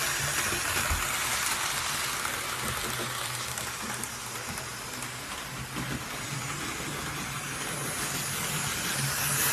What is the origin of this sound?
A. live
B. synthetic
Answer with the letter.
A